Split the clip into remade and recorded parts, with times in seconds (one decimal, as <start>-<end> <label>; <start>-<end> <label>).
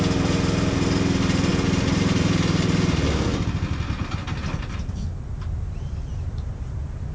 0.0-7.1 recorded